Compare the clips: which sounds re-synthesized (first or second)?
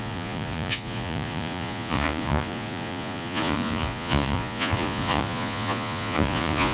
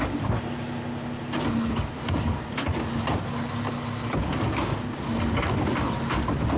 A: first